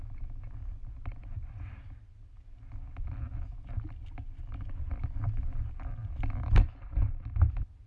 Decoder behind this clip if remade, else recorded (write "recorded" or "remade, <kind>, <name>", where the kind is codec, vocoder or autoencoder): recorded